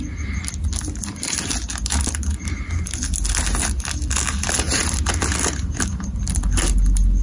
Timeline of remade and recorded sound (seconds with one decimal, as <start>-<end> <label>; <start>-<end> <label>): 0.0-7.2 recorded